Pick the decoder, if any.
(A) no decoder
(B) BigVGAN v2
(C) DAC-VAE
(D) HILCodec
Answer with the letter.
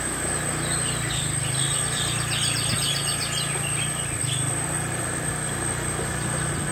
A